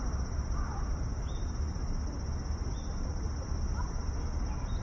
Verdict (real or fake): real